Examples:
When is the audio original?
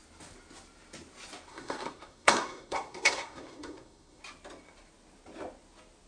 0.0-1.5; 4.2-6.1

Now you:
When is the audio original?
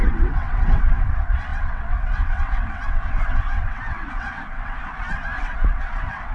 none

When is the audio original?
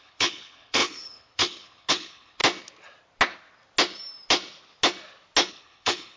2.4-5.5